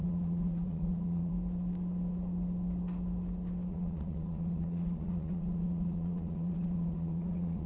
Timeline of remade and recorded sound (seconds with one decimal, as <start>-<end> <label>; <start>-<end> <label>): 0.0-1.3 remade; 1.3-3.7 recorded; 3.7-7.7 remade